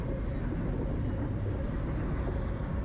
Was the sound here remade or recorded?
recorded